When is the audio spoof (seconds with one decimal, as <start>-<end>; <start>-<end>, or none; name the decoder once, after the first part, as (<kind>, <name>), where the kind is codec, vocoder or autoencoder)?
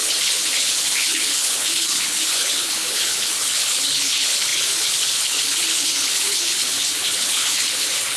0.0-8.2 (codec, HILCodec)